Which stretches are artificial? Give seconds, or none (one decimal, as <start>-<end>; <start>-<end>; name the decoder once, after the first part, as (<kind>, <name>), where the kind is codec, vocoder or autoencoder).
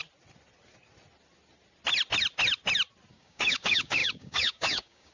3.1-5.1 (codec, DAC)